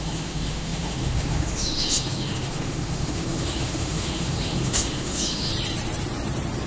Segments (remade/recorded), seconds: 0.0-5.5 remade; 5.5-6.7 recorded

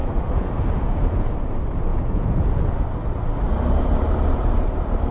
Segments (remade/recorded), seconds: 0.0-1.3 remade; 1.3-1.9 recorded; 1.9-2.6 remade; 2.6-5.1 recorded

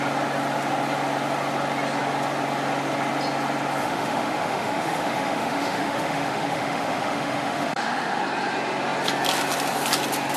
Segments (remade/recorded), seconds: 0.0-3.8 recorded; 3.8-8.2 remade; 8.2-10.4 recorded